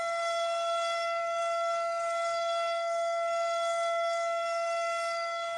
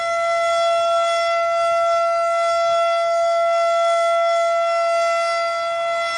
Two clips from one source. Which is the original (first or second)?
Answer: second